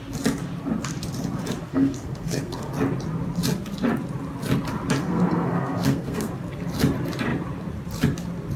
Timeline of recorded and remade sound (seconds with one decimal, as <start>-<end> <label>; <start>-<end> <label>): 0.0-1.7 recorded; 1.7-2.7 remade; 2.7-5.0 recorded; 5.0-6.3 remade; 6.3-8.6 recorded